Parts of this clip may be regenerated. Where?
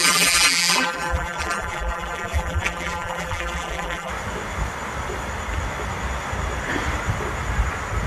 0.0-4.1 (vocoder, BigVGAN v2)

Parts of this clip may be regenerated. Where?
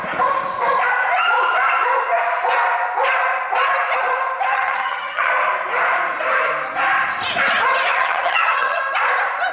4.5-5.3 (vocoder, HiFi-GAN); 7.9-8.8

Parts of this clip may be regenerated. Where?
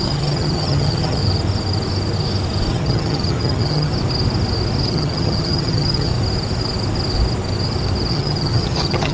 0.0-1.2 (vocoder, HiFi-GAN); 2.7-3.9; 4.9-6.1; 8.1-9.1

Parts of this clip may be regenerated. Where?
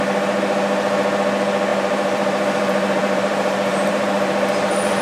1.7-5.0 (vocoder, BigVGAN v2)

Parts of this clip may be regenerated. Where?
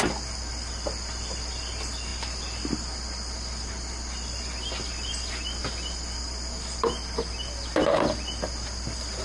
none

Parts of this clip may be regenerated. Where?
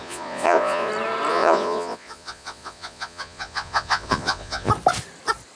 0.0-0.9 (vocoder, Vocos); 1.3-4.7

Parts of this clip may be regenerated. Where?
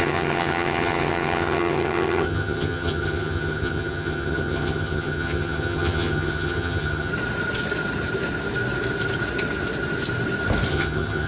0.0-7.1 (vocoder, HiFi-GAN); 10.7-11.3